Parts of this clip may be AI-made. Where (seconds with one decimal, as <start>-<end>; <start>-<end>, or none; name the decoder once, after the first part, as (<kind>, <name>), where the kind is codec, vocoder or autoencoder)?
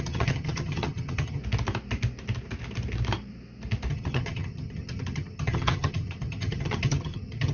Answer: 0.0-1.4 (vocoder, HiFi-GAN); 3.9-7.5